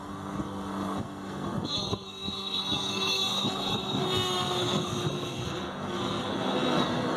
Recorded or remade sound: remade